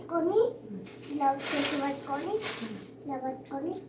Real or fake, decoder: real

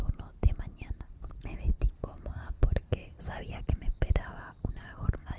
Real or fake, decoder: fake, vocoder, BigVGAN v2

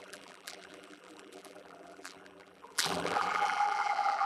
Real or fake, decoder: fake, vocoder, BigVGAN v2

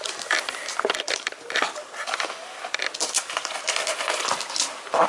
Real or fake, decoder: fake, vocoder, BigVGAN v2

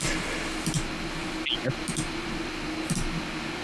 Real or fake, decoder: real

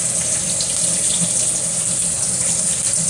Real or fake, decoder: real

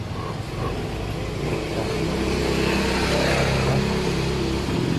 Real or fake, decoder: real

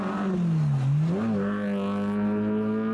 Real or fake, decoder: real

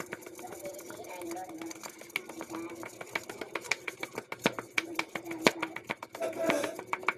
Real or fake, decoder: real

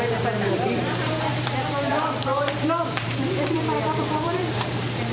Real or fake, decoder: fake, vocoder, BigVGAN v2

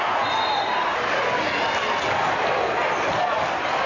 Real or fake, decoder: real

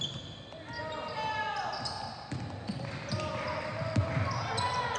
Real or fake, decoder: real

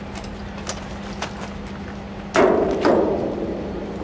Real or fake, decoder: real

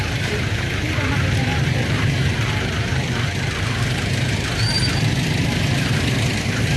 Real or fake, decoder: fake, vocoder, BigVGAN v2